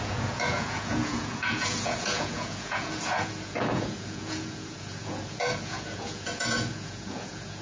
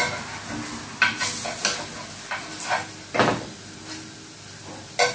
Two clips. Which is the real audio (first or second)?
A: second